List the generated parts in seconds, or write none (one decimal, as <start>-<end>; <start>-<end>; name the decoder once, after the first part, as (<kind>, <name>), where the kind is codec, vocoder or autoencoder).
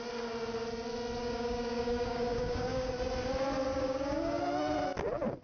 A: 1.2-2.9 (codec, DAC); 3.7-4.4